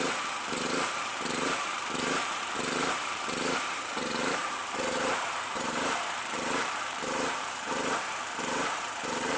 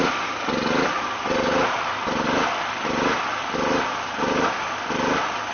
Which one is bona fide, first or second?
second